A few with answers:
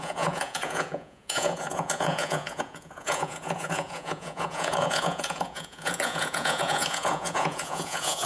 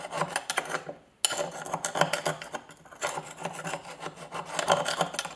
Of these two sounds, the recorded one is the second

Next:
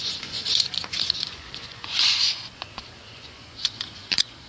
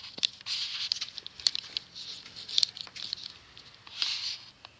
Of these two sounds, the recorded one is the second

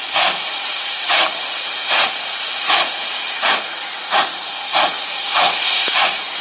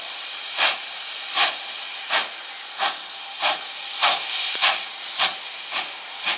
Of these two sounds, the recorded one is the second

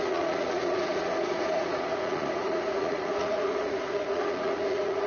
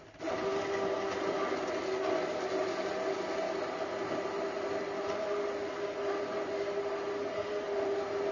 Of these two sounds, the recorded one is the second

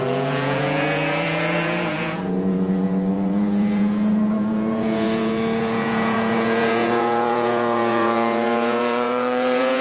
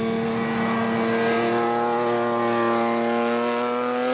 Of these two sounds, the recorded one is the second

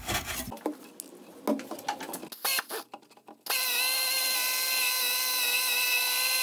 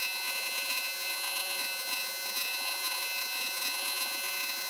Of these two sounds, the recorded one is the first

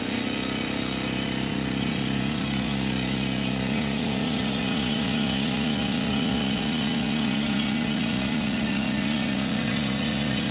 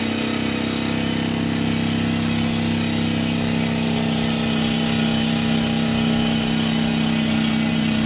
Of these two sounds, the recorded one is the second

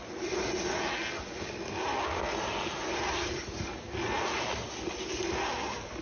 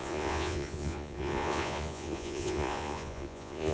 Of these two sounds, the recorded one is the first